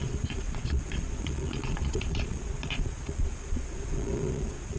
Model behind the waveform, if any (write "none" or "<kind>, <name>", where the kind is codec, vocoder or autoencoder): vocoder, Vocos